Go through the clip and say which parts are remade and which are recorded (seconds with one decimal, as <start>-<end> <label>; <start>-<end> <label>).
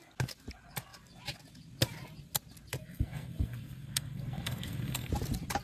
0.0-2.8 recorded; 2.8-5.1 remade; 5.1-5.6 recorded